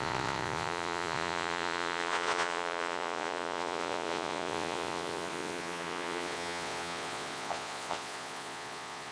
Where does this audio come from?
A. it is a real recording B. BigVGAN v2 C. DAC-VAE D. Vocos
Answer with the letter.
D